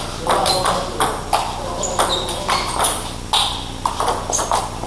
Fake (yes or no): no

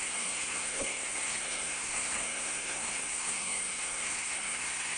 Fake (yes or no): yes